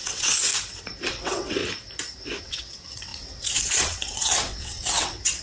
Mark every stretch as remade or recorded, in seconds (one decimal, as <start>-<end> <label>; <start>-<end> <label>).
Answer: 0.0-0.5 remade; 0.5-1.1 recorded; 1.1-1.6 remade; 1.6-2.4 recorded; 2.4-5.4 remade